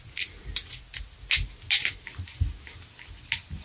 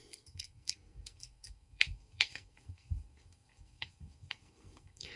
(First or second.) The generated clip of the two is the second